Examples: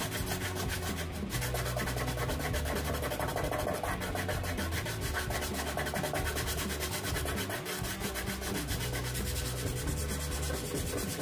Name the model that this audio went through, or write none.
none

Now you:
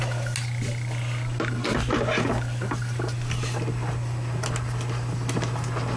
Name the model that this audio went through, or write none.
none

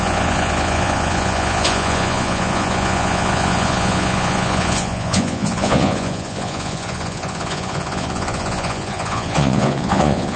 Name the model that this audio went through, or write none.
vocoder, Vocos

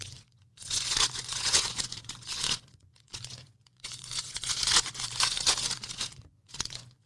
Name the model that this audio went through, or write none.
vocoder, Vocos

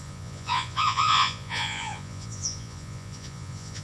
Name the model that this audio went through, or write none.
vocoder, Vocos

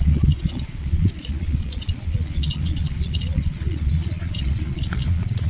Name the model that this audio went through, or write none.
vocoder, Vocos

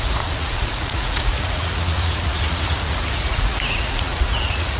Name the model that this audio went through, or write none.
vocoder, Vocos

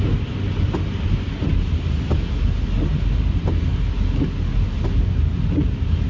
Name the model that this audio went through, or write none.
none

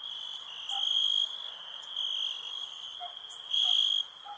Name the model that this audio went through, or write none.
none